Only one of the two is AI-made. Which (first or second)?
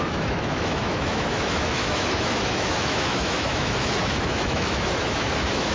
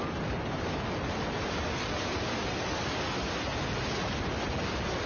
first